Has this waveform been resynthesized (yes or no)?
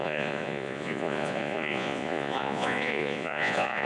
yes